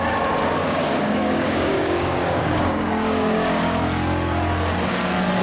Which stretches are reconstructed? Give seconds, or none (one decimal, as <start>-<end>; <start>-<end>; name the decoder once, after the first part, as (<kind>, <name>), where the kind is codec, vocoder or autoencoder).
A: 0.6-3.8 (codec, DAC)